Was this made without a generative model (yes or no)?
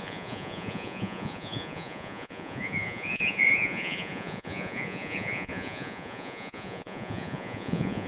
no